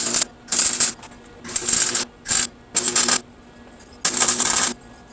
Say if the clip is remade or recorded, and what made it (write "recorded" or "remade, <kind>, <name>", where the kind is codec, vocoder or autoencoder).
recorded